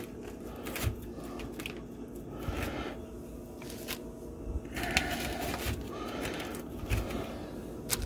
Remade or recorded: recorded